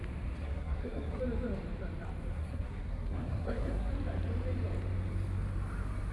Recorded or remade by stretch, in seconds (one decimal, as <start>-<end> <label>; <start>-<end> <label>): 0.0-0.4 recorded; 0.4-1.2 remade; 1.2-2.3 recorded; 2.3-3.9 remade; 3.9-6.1 recorded